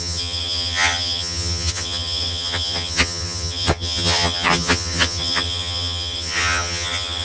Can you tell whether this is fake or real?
fake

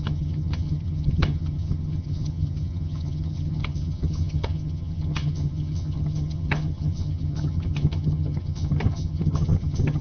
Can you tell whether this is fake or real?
fake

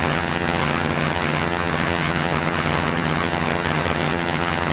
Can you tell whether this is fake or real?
fake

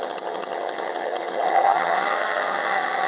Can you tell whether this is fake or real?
fake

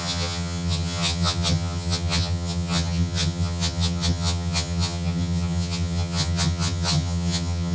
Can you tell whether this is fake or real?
fake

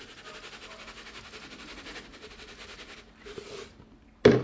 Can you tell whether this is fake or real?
real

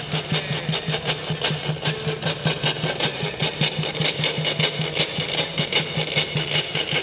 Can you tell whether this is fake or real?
real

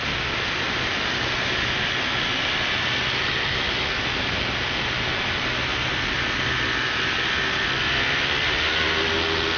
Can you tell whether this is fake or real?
real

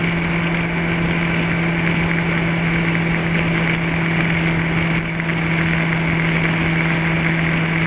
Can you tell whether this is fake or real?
real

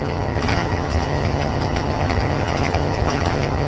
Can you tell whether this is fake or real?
fake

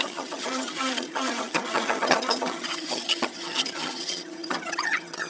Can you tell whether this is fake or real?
fake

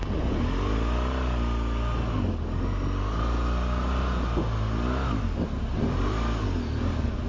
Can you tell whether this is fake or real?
real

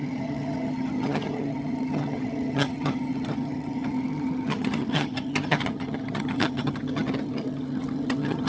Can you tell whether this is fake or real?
fake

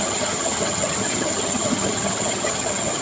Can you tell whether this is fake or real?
fake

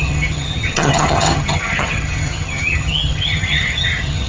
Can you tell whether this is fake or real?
fake